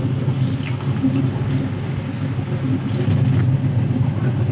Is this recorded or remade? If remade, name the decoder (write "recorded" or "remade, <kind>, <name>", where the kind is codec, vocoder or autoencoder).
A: recorded